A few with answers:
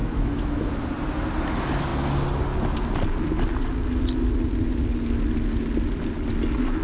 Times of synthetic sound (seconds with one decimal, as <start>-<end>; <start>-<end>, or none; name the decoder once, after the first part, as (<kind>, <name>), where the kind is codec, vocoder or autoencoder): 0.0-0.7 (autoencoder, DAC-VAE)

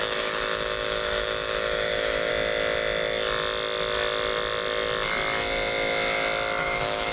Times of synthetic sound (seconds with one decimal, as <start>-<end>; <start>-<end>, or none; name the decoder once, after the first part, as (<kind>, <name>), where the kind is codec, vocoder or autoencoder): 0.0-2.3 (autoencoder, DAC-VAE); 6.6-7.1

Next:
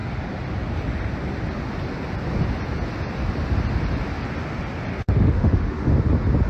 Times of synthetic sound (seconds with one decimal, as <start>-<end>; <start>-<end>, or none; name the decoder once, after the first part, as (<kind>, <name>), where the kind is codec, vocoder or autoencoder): 4.9-5.9 (autoencoder, DAC-VAE)

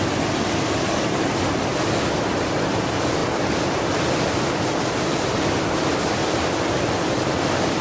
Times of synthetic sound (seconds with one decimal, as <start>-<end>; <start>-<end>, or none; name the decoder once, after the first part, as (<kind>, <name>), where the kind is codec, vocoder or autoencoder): none